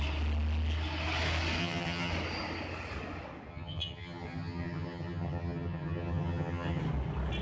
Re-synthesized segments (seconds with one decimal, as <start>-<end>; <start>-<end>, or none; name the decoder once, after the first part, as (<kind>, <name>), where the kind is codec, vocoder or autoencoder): 1.6-2.1 (vocoder, HiFi-GAN); 3.5-6.8